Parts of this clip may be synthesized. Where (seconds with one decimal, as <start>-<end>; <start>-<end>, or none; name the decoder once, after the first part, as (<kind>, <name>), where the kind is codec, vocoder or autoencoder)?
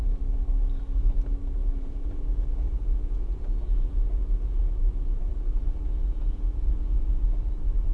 1.6-4.6 (vocoder, Vocos); 5.3-7.5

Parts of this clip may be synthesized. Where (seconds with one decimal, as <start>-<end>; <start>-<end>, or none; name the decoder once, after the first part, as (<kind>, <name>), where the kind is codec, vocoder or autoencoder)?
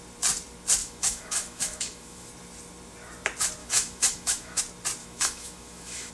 0.8-2.3 (autoencoder, DAC-VAE); 3.6-4.6; 5.0-6.1